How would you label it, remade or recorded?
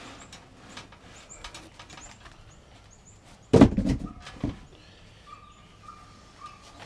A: recorded